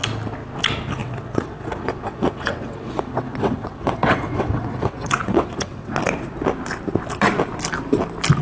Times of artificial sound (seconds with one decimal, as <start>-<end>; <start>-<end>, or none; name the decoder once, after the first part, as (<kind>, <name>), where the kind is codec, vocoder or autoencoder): 1.0-5.9 (vocoder, WaveNeXt)